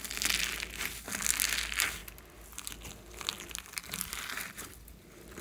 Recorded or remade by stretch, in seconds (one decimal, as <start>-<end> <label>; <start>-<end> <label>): 0.0-5.4 recorded